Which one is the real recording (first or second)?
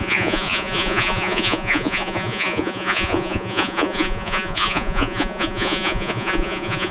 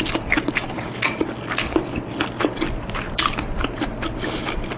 second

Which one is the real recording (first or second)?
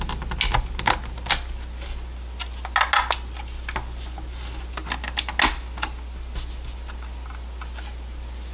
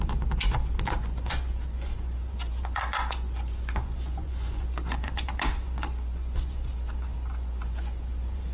first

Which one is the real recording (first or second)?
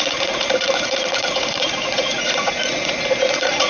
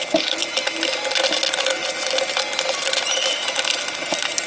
second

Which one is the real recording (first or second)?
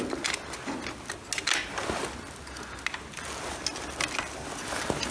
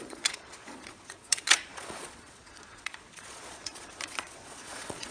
first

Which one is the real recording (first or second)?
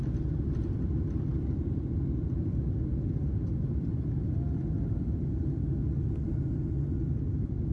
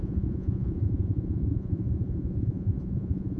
first